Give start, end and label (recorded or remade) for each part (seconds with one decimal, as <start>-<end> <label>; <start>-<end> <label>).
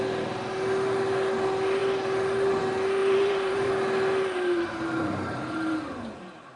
0.0-3.0 recorded; 3.0-3.7 remade; 3.7-4.2 recorded; 4.2-5.7 remade; 5.7-6.6 recorded